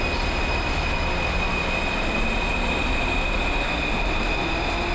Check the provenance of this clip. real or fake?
real